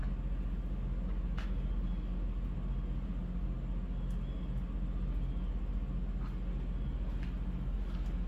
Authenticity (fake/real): real